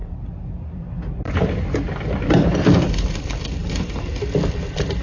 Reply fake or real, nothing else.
fake